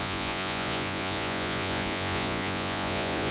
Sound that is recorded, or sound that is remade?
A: remade